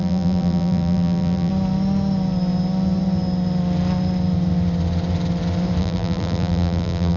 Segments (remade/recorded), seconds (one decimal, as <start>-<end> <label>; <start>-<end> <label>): 0.0-1.5 remade; 1.5-5.8 recorded; 5.8-7.2 remade